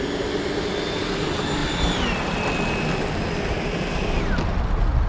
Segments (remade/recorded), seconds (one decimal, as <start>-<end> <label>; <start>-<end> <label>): 0.0-5.1 recorded